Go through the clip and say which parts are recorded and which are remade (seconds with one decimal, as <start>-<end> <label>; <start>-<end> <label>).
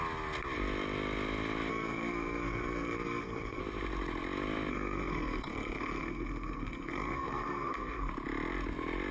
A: 0.0-1.7 recorded; 1.7-3.6 remade; 3.6-4.7 recorded; 4.7-8.1 remade; 8.1-9.1 recorded